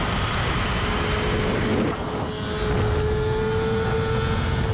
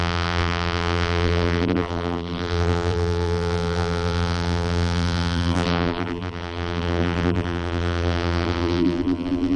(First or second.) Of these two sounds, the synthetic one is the second